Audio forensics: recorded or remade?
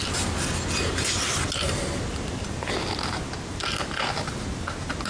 recorded